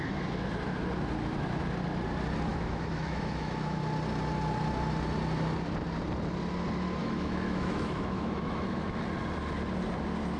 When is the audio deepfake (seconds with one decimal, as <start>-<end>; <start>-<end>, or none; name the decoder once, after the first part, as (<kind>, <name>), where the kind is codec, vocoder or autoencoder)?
2.5-3.8 (autoencoder, DAC-VAE); 7.0-9.0